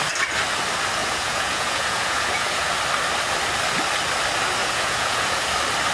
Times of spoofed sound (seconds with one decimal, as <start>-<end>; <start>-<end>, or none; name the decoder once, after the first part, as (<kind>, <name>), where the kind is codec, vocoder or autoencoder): 1.0-2.7 (vocoder, Vocos); 4.6-5.5